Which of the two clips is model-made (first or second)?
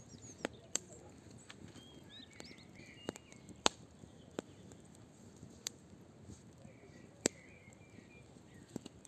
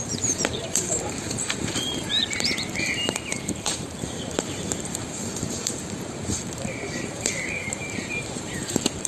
second